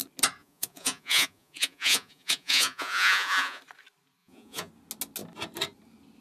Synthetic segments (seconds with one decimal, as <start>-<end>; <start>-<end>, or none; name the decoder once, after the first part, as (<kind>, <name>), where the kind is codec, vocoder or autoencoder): 0.4-3.6 (vocoder, Vocos); 4.2-4.7